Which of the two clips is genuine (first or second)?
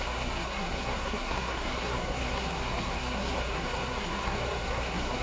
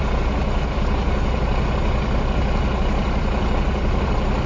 second